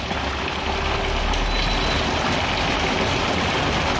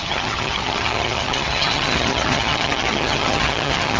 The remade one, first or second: second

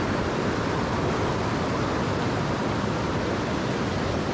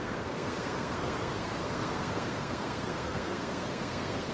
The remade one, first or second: second